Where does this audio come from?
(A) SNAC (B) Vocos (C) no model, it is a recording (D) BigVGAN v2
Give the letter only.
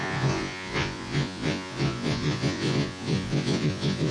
B